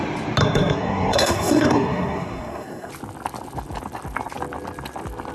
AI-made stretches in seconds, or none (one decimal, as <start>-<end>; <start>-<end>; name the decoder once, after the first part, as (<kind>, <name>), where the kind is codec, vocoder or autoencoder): 0.4-2.9 (codec, SNAC)